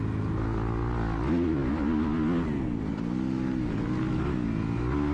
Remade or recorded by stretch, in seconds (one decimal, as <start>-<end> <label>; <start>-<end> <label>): 0.0-5.1 recorded